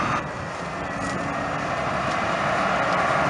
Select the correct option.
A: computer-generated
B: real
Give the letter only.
B